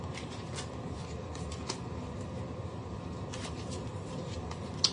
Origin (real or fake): fake